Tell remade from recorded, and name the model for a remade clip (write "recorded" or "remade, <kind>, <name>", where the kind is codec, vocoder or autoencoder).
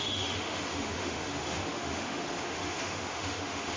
remade, autoencoder, DAC-VAE